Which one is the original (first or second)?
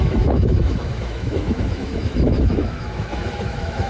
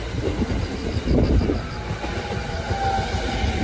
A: second